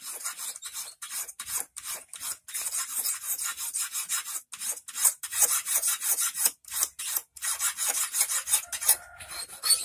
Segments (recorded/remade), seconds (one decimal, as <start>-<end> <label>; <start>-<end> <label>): 0.0-0.6 recorded; 0.6-2.2 remade; 2.2-3.5 recorded; 3.5-4.1 remade; 4.1-5.0 recorded; 5.0-7.0 remade; 7.0-9.8 recorded